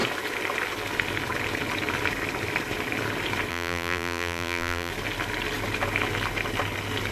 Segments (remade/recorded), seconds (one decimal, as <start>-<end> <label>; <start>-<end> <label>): 0.0-3.5 recorded; 3.5-4.9 remade; 4.9-7.1 recorded

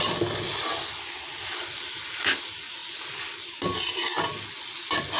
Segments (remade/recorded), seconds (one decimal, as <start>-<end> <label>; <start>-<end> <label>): 0.0-2.8 recorded; 2.8-3.4 remade; 3.4-5.2 recorded

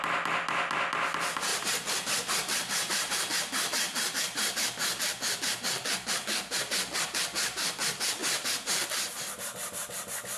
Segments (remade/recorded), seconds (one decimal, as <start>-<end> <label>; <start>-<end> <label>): 0.0-1.5 recorded; 1.5-3.1 remade; 3.1-10.4 recorded

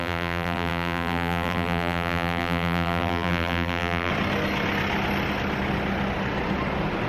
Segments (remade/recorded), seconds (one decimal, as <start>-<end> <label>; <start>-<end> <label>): 0.0-4.1 remade; 4.1-7.1 recorded

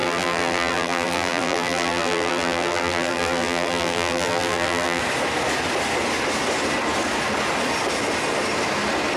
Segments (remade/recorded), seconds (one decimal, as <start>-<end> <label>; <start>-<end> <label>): 0.0-5.0 remade; 5.0-9.2 recorded

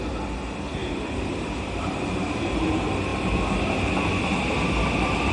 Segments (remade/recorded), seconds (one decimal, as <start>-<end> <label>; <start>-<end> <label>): 0.0-0.8 recorded; 0.8-2.4 remade; 2.4-5.3 recorded

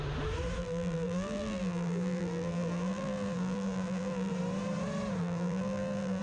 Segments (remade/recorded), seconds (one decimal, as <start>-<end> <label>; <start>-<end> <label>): 0.0-0.6 recorded; 0.6-4.3 remade; 4.3-5.2 recorded; 5.2-6.2 remade

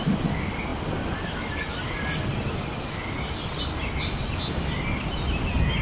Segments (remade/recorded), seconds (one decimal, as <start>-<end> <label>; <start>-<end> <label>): 0.0-5.8 recorded